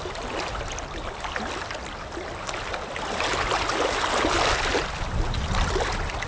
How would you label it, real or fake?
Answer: real